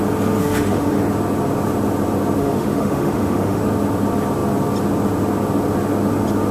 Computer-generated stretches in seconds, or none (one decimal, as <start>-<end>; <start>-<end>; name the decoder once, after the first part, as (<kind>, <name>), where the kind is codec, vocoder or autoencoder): 0.4-1.0 (autoencoder, DAC-VAE); 2.4-3.6